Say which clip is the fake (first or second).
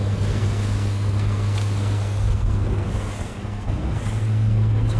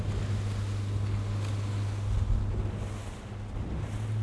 first